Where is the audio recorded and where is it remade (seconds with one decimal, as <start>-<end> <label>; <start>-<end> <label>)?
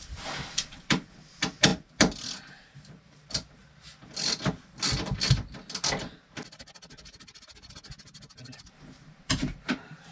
0.0-1.7 remade; 1.7-2.5 recorded; 2.5-3.6 remade; 3.6-8.3 recorded; 8.3-10.1 remade